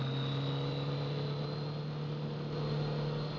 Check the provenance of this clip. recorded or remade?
recorded